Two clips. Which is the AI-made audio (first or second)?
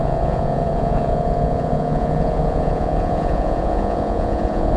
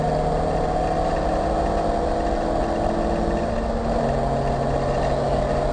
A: first